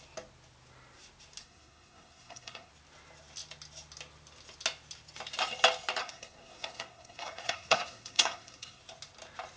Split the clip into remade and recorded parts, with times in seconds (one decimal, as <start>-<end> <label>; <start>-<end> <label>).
0.0-1.4 recorded; 1.4-2.7 remade; 2.7-6.0 recorded; 6.0-8.8 remade; 8.8-9.6 recorded